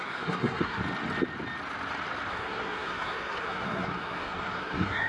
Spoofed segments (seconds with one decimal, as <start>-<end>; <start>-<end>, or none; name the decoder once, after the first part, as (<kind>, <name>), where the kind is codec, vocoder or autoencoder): 0.0-0.8 (codec, SNAC); 2.3-5.1